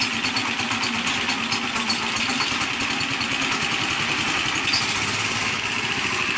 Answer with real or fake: real